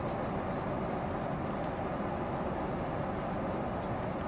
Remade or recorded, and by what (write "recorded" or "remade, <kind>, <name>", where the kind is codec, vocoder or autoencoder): recorded